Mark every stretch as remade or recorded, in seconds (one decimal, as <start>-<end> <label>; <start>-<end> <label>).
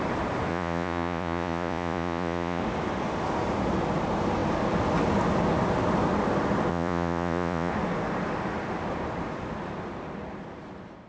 0.0-0.5 recorded; 0.5-2.6 remade; 2.6-6.7 recorded; 6.7-7.7 remade; 7.7-11.1 recorded